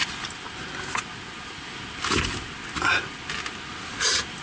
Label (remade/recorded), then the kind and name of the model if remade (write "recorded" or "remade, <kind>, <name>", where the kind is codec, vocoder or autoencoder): recorded